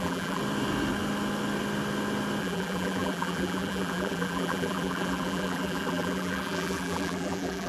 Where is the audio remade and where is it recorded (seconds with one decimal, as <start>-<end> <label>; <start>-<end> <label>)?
0.0-0.4 remade; 0.4-2.4 recorded; 2.4-7.7 remade